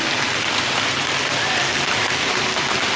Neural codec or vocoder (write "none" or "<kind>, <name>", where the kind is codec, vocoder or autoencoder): none